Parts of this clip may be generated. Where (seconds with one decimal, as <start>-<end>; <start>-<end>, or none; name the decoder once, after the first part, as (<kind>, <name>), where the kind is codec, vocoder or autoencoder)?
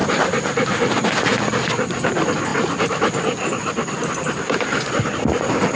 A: none